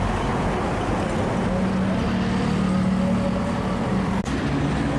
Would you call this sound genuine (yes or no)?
yes